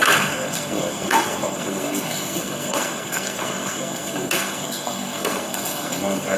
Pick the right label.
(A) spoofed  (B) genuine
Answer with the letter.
A